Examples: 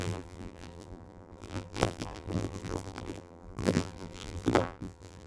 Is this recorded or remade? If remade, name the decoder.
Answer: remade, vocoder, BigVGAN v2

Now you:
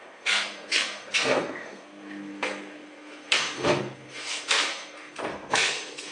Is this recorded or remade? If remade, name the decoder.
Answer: remade, codec, SNAC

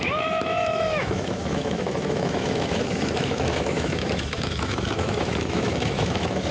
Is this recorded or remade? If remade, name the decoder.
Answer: remade, autoencoder, DAC-VAE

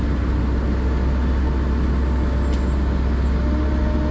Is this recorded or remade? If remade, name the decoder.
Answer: recorded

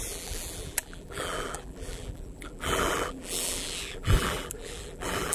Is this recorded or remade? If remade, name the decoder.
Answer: remade, vocoder, BigVGAN v2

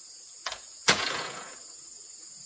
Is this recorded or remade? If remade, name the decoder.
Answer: remade, vocoder, Vocos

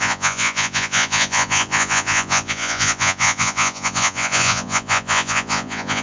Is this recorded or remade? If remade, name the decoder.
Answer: remade, vocoder, Vocos